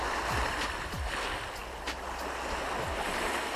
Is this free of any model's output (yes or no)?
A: yes